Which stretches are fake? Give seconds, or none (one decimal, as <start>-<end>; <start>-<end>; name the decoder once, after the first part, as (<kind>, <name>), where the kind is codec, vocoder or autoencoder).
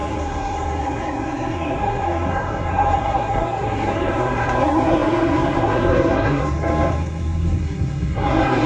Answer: 0.0-8.7 (codec, SNAC)